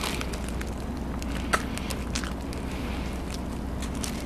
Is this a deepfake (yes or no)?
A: no